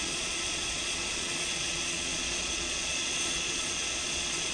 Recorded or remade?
remade